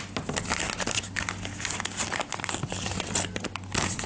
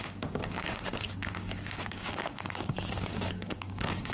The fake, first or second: second